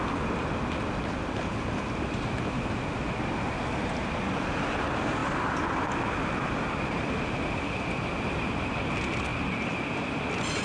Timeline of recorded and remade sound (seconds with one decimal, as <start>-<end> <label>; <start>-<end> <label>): 0.0-10.6 recorded